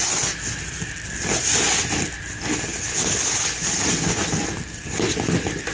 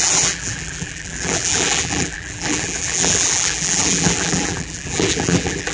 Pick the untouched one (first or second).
first